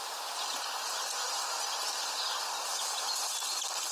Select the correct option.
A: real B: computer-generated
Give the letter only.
A